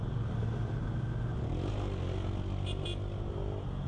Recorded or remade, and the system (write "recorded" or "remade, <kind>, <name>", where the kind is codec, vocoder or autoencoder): recorded